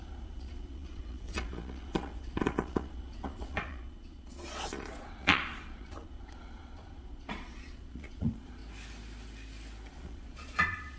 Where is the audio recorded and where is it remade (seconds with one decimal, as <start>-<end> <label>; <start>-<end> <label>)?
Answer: 0.0-8.6 remade; 8.6-9.9 recorded; 9.9-11.0 remade